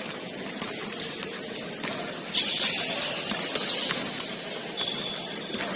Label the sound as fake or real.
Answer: real